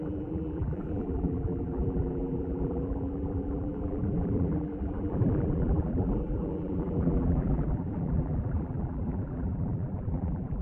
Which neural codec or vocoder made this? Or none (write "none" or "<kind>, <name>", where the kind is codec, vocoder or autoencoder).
vocoder, BigVGAN v2